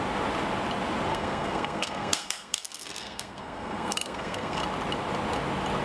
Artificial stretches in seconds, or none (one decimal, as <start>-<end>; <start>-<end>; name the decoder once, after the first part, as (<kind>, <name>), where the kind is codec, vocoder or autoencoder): 1.1-4.6 (codec, SNAC)